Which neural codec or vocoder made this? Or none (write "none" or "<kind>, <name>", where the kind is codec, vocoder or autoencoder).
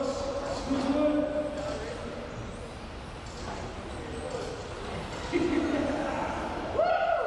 none